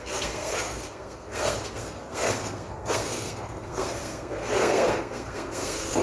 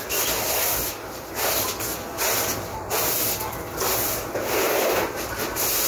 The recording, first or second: second